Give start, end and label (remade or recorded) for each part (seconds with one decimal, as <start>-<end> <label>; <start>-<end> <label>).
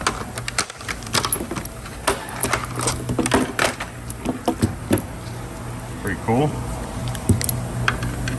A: 0.0-8.4 recorded